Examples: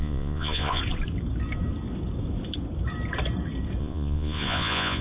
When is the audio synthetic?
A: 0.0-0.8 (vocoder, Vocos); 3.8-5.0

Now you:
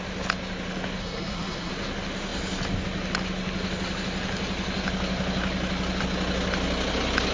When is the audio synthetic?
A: 1.0-1.7 (codec, SNAC)

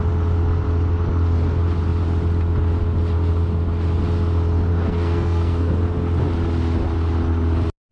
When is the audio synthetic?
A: 4.7-5.7 (codec, SNAC)

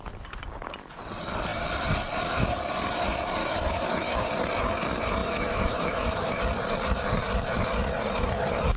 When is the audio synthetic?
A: 3.4-4.3 (autoencoder, DAC-VAE); 5.2-6.4

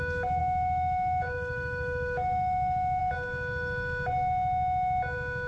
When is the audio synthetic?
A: 0.4-3.0 (autoencoder, DAC-VAE)

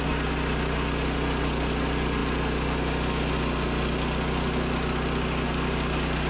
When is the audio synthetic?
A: none

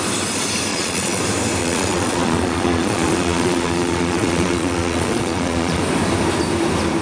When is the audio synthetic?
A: 0.7-1.2 (vocoder, Vocos); 1.6-5.8

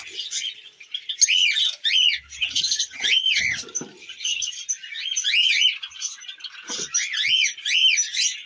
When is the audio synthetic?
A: 2.4-3.4 (vocoder, HiFi-GAN); 4.0-4.6